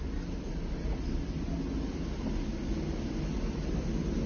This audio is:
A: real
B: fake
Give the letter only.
A